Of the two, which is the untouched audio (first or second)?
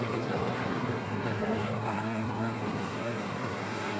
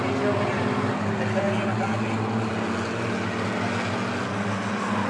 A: second